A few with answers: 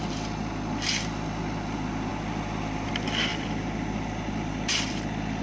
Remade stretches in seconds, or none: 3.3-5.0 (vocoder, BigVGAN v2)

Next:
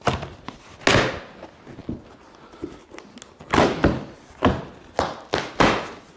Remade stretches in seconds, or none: none

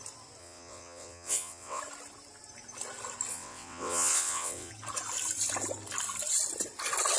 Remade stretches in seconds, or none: 0.4-1.8 (vocoder, WaveNeXt); 3.3-4.7

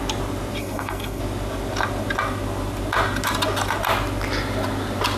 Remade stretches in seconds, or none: 0.6-1.2 (codec, SNAC)

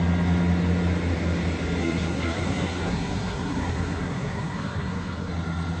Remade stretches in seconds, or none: 1.8-5.3 (codec, SNAC)